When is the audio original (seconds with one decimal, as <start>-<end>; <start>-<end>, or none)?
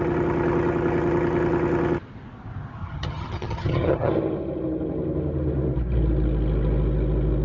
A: 0.0-2.8; 4.1-7.4